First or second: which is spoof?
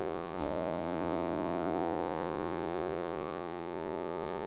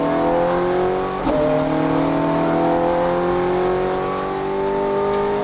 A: first